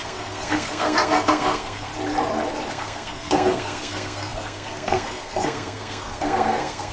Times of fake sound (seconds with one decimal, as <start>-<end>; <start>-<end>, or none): 0.0-1.9; 2.7-6.9